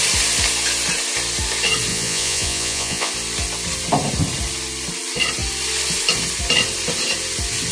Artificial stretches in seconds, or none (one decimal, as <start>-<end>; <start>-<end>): 1.9-3.1